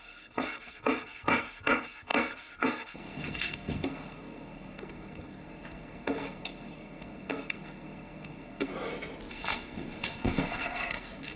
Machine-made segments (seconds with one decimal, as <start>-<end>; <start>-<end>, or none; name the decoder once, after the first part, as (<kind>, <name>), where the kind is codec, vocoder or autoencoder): 0.0-8.7 (codec, SNAC); 9.3-11.4